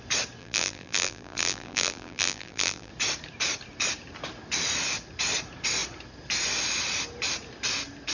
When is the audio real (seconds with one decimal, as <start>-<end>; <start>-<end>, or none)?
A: 0.0-0.4; 2.9-8.1